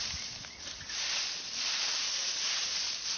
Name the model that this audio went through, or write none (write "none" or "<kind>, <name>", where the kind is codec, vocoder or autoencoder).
none